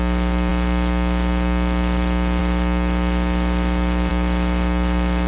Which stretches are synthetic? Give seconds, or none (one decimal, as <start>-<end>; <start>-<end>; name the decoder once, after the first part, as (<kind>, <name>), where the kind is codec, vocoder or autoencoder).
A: none